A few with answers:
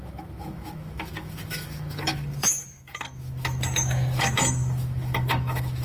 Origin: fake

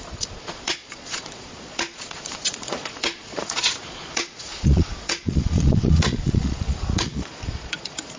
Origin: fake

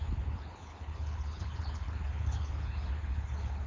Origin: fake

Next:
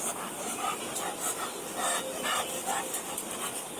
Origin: real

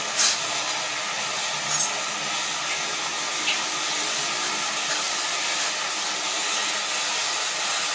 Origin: real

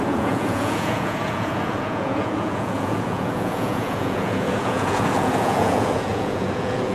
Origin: fake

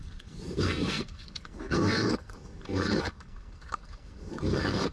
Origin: fake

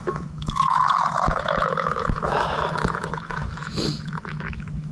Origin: fake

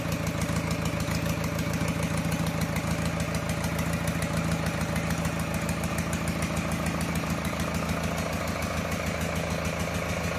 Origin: real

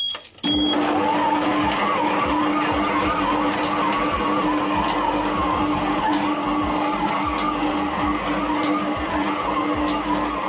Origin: real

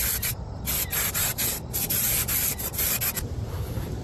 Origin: fake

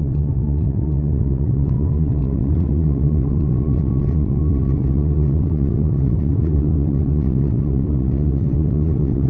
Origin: fake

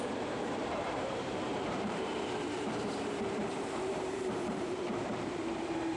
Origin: fake